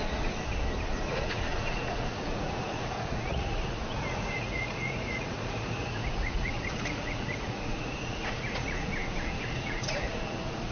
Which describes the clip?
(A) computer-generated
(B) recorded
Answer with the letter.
A